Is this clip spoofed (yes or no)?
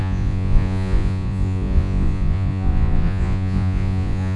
yes